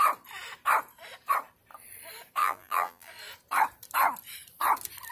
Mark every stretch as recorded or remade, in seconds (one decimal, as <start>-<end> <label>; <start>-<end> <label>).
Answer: 0.0-2.4 recorded; 2.4-3.1 remade; 3.1-5.1 recorded